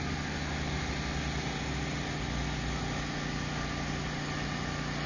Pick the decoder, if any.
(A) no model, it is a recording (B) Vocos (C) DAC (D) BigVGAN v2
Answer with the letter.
A